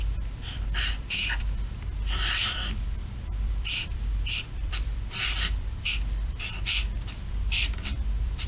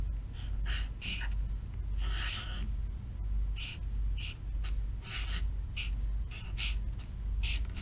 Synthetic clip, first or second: first